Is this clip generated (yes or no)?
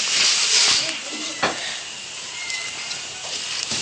no